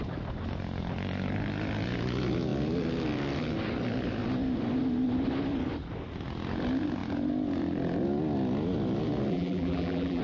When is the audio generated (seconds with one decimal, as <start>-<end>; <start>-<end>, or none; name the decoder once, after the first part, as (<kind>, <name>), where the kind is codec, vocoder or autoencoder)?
9.3-10.2 (vocoder, BigVGAN v2)